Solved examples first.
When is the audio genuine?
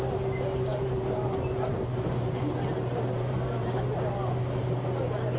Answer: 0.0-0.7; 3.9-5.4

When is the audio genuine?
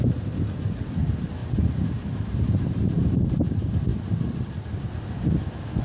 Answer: 0.0-1.4; 3.2-5.8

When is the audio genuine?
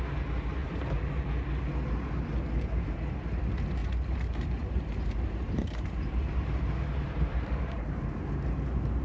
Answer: 0.0-0.6; 1.1-3.8; 8.3-9.0